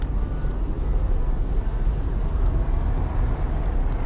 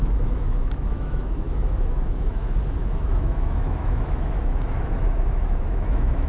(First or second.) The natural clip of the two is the first